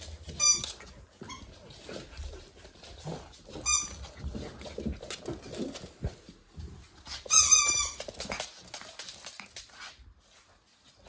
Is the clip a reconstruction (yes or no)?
no